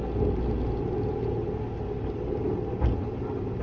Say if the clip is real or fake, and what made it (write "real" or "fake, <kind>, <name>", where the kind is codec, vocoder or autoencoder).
real